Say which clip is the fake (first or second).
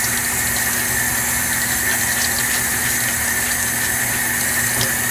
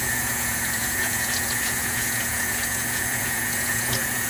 second